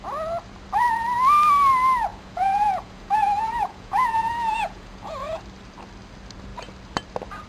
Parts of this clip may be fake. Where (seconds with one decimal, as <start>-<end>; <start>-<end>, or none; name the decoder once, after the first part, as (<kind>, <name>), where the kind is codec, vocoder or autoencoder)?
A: 2.1-5.4 (vocoder, Vocos)